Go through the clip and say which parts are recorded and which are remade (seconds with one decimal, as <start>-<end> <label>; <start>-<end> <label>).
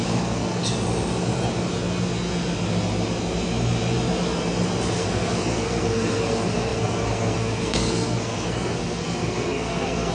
0.0-0.6 remade; 0.6-4.9 recorded; 4.9-10.1 remade